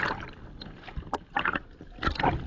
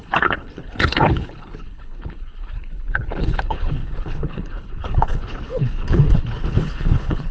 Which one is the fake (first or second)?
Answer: second